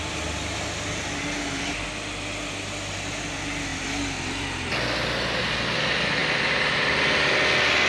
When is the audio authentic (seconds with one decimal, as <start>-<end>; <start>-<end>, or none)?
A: 0.0-7.9